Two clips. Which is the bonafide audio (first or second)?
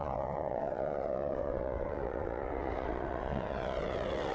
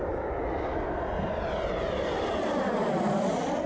second